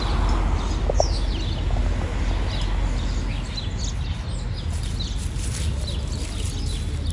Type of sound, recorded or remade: recorded